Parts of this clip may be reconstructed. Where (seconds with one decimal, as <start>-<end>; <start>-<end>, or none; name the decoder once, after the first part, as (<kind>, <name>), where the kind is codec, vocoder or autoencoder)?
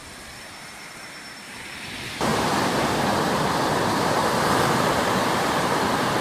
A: 2.3-4.9 (vocoder, BigVGAN v2)